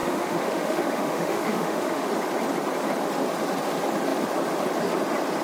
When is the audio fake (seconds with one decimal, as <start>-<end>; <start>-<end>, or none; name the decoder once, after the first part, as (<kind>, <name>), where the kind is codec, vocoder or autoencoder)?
0.0-2.1 (autoencoder, DAC-VAE)